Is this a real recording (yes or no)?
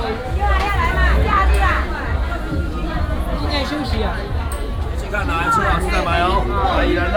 yes